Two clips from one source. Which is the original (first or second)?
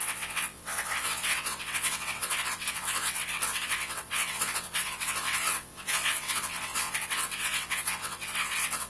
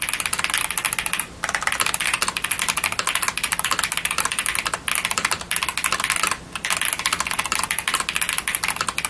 second